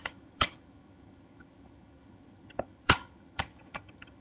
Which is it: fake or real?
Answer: fake